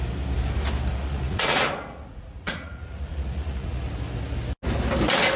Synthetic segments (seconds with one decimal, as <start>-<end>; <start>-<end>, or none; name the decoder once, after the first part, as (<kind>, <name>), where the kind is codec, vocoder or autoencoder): 1.0-3.8 (vocoder, Vocos)